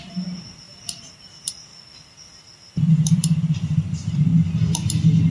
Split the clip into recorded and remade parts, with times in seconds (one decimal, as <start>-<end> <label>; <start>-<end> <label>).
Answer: 0.0-1.7 remade; 1.7-2.9 recorded; 2.9-4.3 remade; 4.3-5.3 recorded